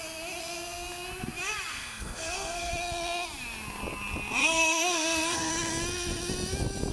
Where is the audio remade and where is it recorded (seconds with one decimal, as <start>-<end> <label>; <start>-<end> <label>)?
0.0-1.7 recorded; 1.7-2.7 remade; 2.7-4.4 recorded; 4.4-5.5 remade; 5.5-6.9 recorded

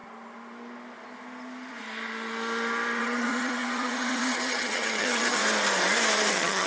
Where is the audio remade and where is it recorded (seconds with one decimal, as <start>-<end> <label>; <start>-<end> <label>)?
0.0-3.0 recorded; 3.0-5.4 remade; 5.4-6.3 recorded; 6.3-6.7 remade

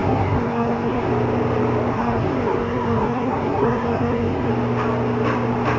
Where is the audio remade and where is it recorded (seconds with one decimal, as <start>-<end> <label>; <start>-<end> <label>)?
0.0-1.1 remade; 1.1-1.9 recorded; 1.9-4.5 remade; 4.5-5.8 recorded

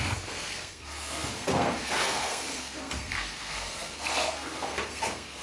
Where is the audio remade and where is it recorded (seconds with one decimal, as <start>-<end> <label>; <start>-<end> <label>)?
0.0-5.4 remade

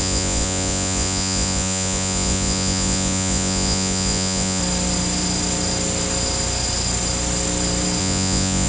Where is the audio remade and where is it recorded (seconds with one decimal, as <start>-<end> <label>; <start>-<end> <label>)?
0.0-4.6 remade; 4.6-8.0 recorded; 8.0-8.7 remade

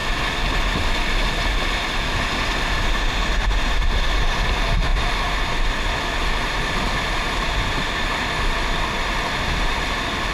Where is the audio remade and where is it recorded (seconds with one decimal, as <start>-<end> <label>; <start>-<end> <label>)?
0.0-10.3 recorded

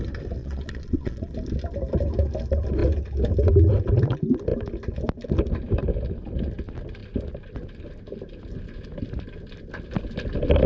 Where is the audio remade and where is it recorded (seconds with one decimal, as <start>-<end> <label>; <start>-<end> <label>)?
0.0-0.4 recorded; 0.4-1.3 remade; 1.3-10.7 recorded